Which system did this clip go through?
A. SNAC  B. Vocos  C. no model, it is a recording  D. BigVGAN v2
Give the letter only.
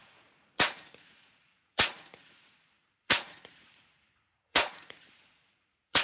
B